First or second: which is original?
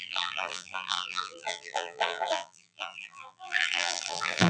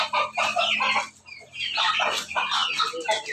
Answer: second